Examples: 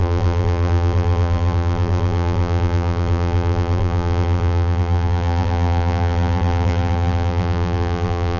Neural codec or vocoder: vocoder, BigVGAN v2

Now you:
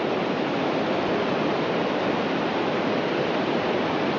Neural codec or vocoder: none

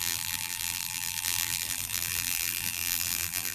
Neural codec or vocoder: vocoder, BigVGAN v2